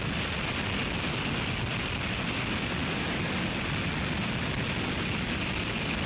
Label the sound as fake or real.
real